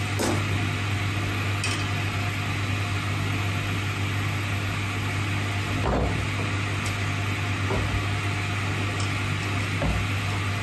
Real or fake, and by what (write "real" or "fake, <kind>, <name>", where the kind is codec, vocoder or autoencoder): real